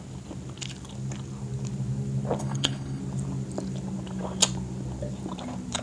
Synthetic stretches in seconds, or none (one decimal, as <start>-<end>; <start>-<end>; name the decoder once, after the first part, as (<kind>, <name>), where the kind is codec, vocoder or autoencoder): 2.4-3.0 (codec, HILCodec)